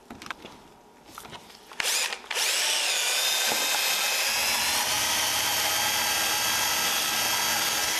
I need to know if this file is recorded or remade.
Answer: recorded